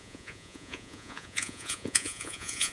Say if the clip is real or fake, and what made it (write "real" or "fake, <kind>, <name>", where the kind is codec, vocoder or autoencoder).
fake, vocoder, Vocos